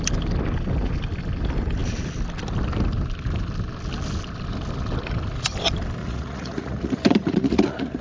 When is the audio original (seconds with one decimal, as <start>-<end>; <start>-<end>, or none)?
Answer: 0.0-6.0